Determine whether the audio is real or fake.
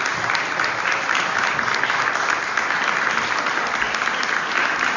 real